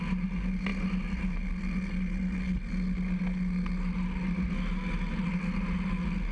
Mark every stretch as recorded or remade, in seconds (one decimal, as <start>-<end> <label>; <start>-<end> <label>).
0.0-6.3 recorded